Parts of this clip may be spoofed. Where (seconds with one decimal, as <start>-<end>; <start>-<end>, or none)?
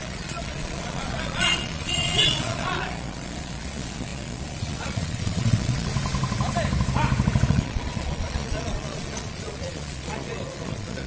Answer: 0.0-5.9; 7.5-11.1